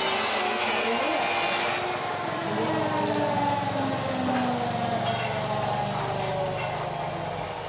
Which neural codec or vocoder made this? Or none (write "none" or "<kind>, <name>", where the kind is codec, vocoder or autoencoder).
none